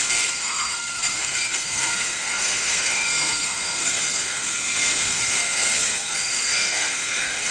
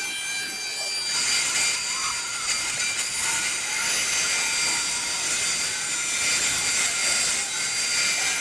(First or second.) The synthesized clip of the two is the first